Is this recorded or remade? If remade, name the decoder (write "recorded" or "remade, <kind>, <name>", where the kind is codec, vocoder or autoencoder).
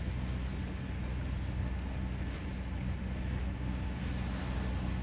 recorded